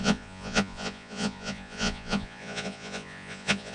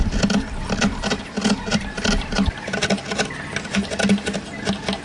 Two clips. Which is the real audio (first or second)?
second